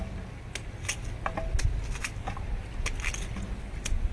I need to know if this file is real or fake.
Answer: real